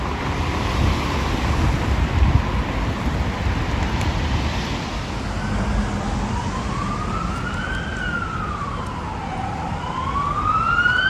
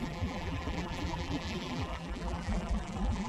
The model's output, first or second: second